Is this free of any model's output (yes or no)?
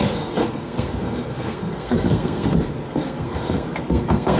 no